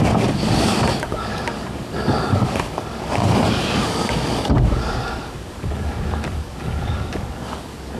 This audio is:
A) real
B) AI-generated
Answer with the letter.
B